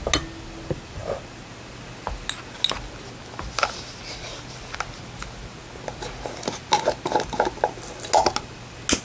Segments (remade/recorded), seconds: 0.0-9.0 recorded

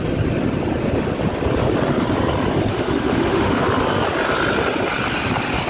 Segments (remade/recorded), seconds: 0.0-2.7 recorded; 2.7-3.6 remade; 3.6-5.7 recorded